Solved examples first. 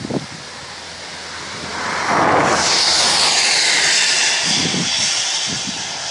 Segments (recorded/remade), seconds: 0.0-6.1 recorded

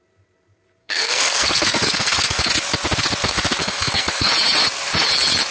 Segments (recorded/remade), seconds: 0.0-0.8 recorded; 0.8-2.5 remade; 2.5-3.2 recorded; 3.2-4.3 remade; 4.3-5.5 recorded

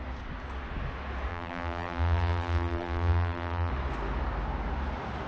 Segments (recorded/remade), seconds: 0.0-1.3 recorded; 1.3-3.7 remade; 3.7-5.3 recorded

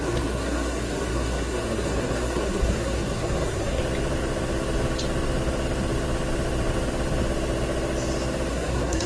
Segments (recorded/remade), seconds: 0.0-3.8 remade; 3.8-8.5 recorded; 8.5-9.1 remade